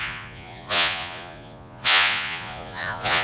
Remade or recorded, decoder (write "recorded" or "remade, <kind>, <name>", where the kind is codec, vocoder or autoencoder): remade, vocoder, Vocos